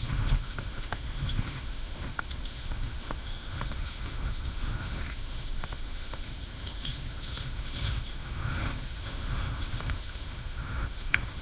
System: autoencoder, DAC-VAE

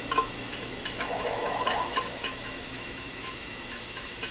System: autoencoder, DAC-VAE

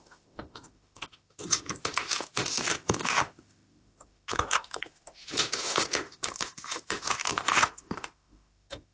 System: autoencoder, DAC-VAE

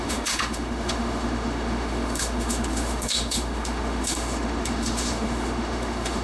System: autoencoder, DAC-VAE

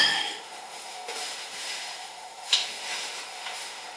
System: autoencoder, DAC-VAE